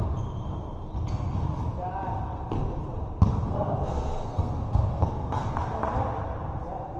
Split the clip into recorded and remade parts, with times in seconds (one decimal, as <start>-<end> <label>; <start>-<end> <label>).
0.0-3.3 recorded; 3.3-5.5 remade; 5.5-7.0 recorded